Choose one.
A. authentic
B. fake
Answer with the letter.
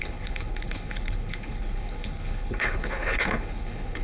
B